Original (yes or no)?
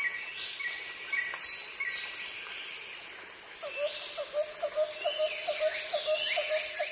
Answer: yes